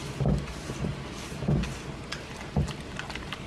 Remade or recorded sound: recorded